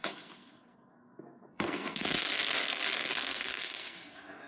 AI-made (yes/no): yes